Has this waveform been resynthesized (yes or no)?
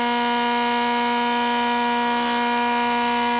no